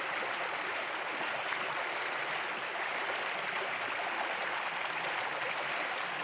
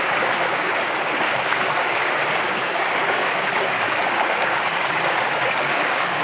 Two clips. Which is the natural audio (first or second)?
first